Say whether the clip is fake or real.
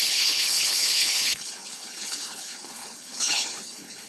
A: fake